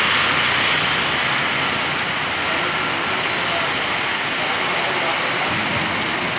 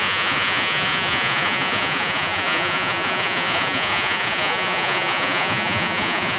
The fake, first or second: second